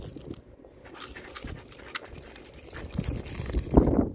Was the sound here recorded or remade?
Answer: recorded